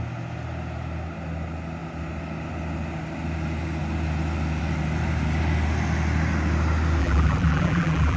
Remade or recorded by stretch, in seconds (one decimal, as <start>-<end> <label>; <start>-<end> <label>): 0.0-7.0 recorded; 7.0-8.2 remade